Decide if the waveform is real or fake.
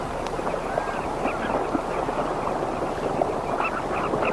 real